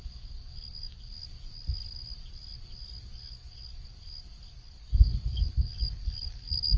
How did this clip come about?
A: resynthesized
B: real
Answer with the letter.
B